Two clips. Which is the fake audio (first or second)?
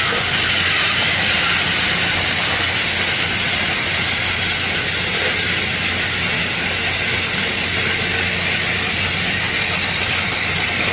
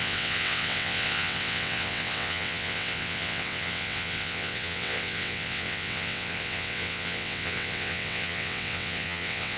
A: second